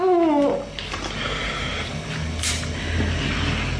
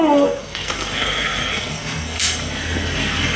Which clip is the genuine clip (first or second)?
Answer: first